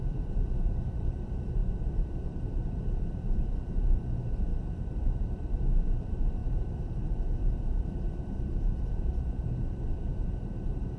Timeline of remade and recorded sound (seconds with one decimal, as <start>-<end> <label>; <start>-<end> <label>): 0.0-4.5 remade; 4.5-5.0 recorded; 5.0-11.0 remade